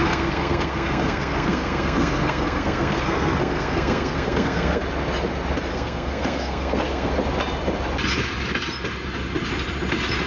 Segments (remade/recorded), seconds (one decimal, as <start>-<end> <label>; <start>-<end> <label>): 0.0-4.8 remade; 4.8-5.7 recorded; 5.7-7.1 remade; 7.1-10.3 recorded